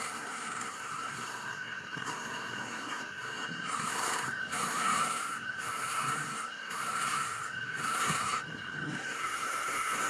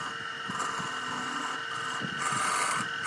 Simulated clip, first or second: first